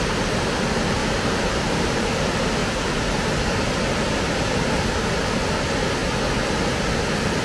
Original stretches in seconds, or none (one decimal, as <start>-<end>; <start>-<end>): 0.0-1.0; 2.2-2.6; 3.1-7.4